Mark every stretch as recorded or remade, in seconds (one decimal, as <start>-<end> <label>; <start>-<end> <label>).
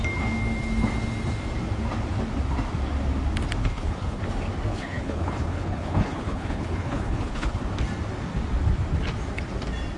0.0-3.6 recorded; 3.6-4.2 remade; 4.2-4.7 recorded; 4.7-7.6 remade; 7.6-10.0 recorded